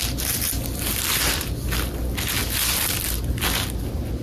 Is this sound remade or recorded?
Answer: recorded